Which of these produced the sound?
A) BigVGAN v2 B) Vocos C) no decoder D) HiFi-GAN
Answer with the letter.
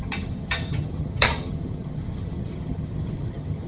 D